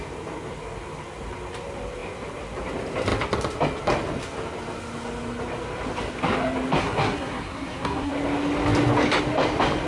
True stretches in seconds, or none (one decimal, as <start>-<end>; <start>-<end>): 0.0-6.8; 8.1-9.9